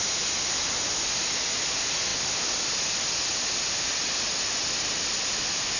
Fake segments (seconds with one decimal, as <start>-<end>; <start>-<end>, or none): none